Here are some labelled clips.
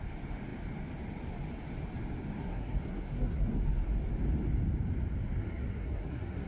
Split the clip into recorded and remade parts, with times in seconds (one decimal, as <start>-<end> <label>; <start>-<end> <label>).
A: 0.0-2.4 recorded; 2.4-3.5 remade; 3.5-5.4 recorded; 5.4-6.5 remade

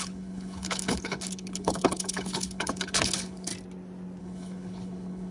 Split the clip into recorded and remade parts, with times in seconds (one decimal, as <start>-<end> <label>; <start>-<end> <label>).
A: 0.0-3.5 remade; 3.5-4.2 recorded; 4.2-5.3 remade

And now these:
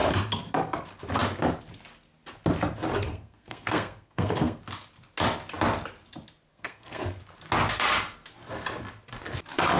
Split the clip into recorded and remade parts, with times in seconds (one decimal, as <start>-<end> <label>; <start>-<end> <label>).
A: 0.0-3.1 recorded; 3.1-4.6 remade; 4.6-6.5 recorded; 6.5-7.2 remade; 7.2-9.8 recorded

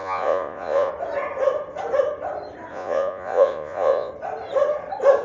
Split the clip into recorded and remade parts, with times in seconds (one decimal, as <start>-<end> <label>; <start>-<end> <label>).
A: 0.0-0.9 remade; 0.9-2.7 recorded; 2.7-4.1 remade; 4.1-5.2 recorded

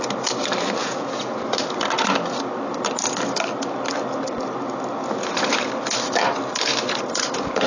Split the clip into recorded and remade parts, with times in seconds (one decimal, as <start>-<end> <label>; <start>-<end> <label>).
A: 0.0-0.8 recorded; 0.8-1.4 remade; 1.4-7.7 recorded